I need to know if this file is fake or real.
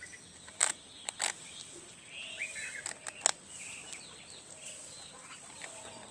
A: real